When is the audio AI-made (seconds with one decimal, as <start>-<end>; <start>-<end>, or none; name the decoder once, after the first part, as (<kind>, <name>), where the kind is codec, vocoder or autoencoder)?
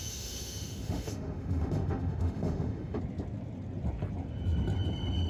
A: 0.0-3.0 (autoencoder, DAC-VAE)